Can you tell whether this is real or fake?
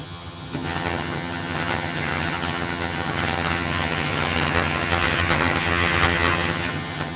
fake